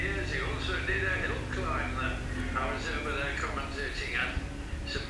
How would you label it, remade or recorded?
recorded